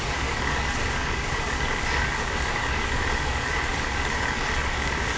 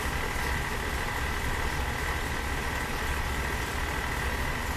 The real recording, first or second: second